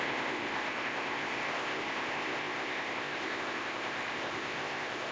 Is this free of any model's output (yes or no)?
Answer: no